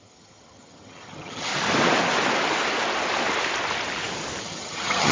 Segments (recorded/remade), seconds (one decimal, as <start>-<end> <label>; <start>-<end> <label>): 0.0-1.5 remade; 1.5-4.4 recorded; 4.4-5.1 remade